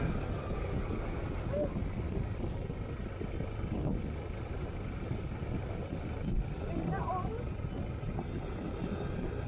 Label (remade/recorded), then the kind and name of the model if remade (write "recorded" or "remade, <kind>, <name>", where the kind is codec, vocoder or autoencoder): recorded